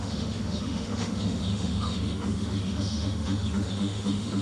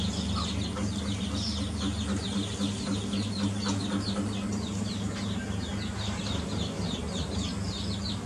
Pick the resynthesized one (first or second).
first